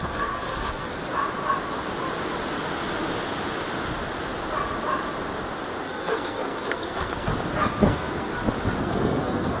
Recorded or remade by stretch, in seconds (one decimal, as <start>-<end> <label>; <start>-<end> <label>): 0.0-0.9 remade; 0.9-5.8 recorded; 5.8-7.3 remade; 7.3-7.8 recorded; 7.8-8.3 remade; 8.3-8.8 recorded; 8.8-9.6 remade